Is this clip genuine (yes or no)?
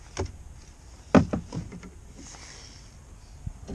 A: yes